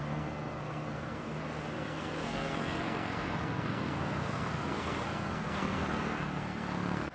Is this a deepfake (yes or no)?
yes